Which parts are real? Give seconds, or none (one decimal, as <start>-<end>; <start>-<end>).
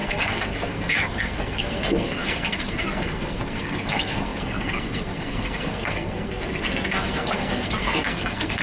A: none